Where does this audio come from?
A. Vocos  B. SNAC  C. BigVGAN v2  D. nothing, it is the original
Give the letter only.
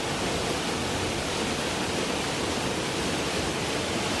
D